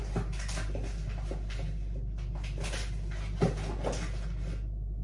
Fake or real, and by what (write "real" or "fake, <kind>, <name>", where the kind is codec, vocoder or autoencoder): real